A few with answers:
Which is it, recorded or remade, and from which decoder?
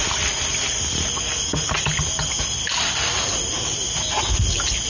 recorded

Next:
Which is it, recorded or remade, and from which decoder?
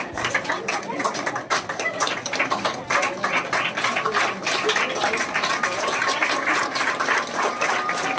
recorded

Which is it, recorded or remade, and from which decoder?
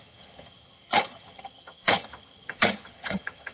remade, vocoder, HiFi-GAN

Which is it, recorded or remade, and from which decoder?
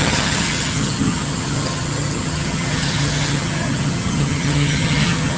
remade, vocoder, HiFi-GAN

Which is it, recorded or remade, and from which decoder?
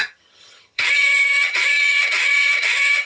remade, vocoder, HiFi-GAN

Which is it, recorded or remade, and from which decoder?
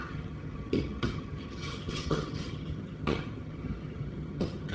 remade, vocoder, HiFi-GAN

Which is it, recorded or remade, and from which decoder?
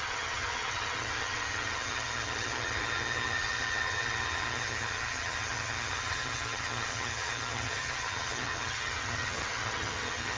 remade, vocoder, HiFi-GAN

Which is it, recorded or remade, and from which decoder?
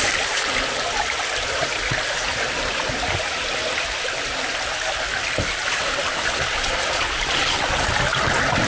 recorded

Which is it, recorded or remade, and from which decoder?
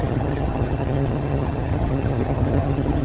remade, vocoder, HiFi-GAN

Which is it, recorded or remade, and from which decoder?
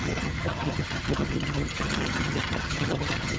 remade, vocoder, HiFi-GAN